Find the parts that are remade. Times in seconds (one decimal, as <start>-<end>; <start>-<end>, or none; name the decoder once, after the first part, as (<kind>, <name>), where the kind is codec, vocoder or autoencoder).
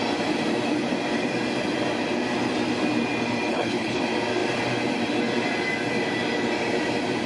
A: 3.5-4.0 (codec, HILCodec)